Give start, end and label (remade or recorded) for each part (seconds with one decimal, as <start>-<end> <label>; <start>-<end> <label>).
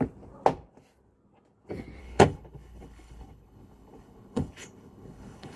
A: 0.0-2.0 recorded; 2.0-5.6 remade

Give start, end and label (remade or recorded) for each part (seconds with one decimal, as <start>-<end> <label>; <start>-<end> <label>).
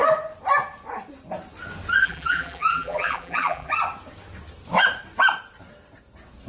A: 0.0-2.0 recorded; 2.0-3.7 remade; 3.7-6.5 recorded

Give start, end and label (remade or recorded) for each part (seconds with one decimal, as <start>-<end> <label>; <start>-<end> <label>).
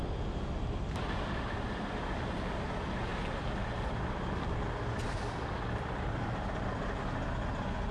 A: 0.0-7.9 recorded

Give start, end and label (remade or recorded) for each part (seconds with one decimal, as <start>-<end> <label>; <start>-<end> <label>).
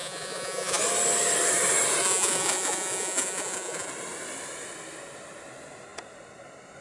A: 0.0-0.8 remade; 0.8-2.0 recorded; 2.0-3.9 remade; 3.9-6.8 recorded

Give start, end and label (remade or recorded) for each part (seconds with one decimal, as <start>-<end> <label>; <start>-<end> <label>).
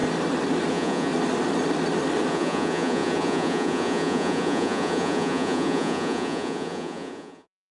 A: 0.0-0.7 recorded; 0.7-1.1 remade; 1.1-2.3 recorded; 2.3-7.7 remade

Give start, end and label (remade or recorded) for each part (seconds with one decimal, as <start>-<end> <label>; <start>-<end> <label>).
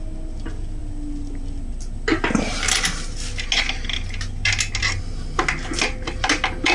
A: 0.0-6.7 recorded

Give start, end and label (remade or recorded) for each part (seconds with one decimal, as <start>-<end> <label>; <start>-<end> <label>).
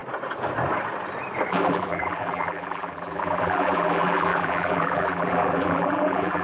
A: 0.0-1.5 recorded; 1.5-6.4 remade